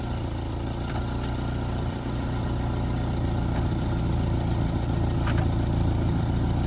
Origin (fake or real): real